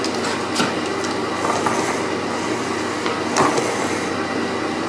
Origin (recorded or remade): recorded